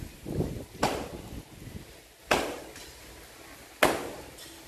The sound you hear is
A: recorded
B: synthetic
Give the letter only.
A